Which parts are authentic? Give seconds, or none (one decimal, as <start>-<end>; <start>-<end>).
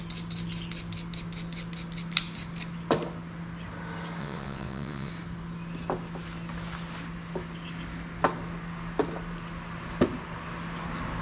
0.0-4.2; 5.1-11.2